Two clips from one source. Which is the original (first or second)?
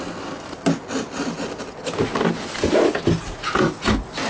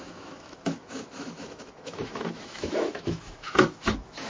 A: first